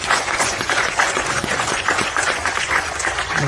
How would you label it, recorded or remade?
remade